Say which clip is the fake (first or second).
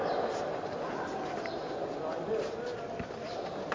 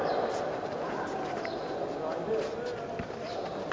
first